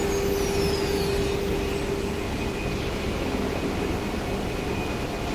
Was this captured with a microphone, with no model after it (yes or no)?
yes